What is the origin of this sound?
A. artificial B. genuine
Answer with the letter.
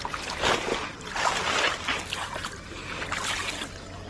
B